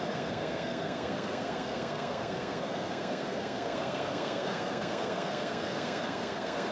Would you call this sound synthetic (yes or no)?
yes